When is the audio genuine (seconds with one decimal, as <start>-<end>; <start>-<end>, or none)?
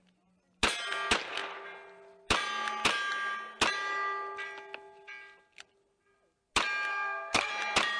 0.0-6.9; 7.5-8.0